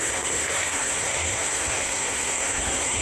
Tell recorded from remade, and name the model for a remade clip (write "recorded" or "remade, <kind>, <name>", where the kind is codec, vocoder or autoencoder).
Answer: remade, codec, SNAC